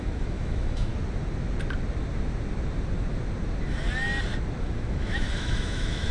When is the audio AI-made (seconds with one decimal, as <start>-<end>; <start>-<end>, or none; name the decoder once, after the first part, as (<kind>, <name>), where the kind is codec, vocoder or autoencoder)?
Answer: 0.0-0.9 (autoencoder, DAC-VAE); 4.6-6.1